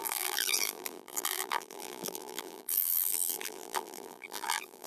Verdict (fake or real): fake